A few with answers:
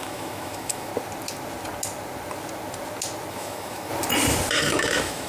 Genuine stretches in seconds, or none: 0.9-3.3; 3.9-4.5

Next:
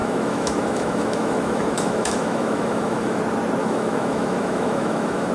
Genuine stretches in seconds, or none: 3.2-3.6

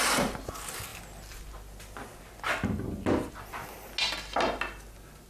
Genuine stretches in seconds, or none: 0.0-5.3

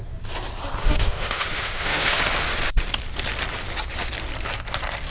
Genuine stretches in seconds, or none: 0.0-0.8; 2.2-5.1

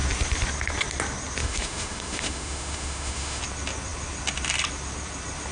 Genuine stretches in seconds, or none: 0.0-1.4; 3.4-5.5

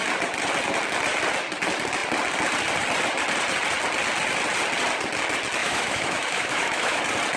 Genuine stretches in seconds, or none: 0.0-5.6; 7.0-7.4

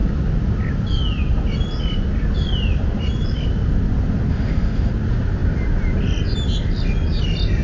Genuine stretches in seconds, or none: 0.0-4.3; 4.9-7.6

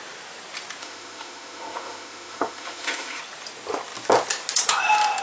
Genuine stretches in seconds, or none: 0.0-0.8; 3.2-5.2